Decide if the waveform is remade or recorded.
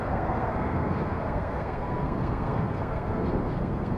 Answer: remade